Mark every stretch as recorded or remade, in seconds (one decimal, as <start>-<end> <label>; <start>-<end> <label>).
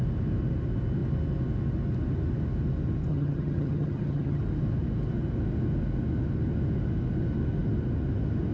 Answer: 0.0-3.1 recorded; 3.1-4.4 remade; 4.4-8.5 recorded